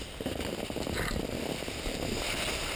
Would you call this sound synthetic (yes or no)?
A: no